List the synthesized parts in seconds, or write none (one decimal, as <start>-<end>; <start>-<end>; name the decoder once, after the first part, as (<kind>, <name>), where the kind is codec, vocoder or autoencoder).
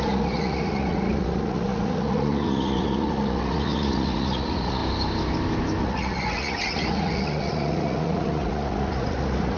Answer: 0.0-4.8 (vocoder, Vocos); 5.8-9.6